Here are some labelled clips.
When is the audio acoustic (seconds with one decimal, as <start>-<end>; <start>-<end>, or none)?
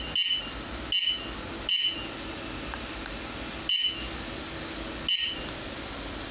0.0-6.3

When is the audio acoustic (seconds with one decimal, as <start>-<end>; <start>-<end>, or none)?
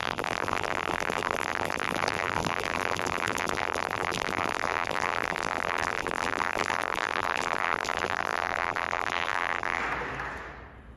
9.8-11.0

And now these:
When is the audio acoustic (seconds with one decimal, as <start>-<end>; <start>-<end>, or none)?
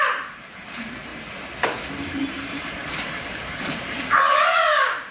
1.1-2.3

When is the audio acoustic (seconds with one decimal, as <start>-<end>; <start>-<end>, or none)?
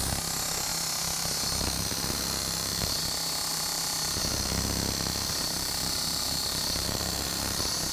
0.0-3.5; 4.2-5.1; 7.4-7.9